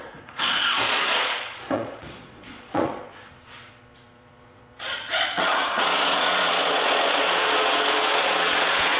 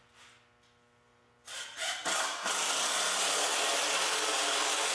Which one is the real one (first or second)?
second